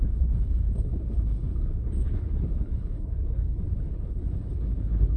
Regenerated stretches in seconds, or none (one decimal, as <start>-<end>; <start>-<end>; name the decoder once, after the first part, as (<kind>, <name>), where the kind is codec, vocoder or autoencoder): 0.0-5.2 (codec, HILCodec)

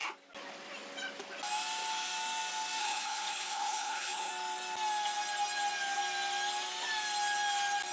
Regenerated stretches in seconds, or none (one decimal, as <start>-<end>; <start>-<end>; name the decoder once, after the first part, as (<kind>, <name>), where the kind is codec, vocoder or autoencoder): 2.8-4.3 (codec, HILCodec)

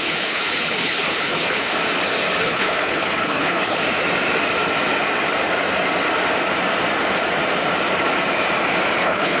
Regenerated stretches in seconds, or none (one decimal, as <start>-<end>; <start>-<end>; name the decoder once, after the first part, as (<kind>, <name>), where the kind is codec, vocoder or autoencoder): 0.0-1.7 (codec, HILCodec); 2.4-3.8; 9.0-9.4